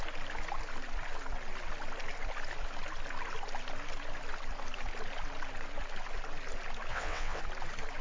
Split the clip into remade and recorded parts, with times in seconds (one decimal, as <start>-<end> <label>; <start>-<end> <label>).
0.0-6.9 recorded; 6.9-7.4 remade; 7.4-8.0 recorded